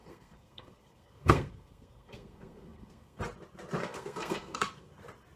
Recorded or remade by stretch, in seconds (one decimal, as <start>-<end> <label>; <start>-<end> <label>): 0.0-3.2 remade; 3.2-3.8 recorded; 3.8-4.9 remade; 4.9-5.4 recorded